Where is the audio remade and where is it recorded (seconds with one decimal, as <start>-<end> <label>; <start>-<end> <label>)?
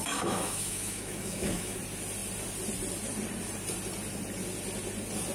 0.0-1.8 remade; 1.8-5.3 recorded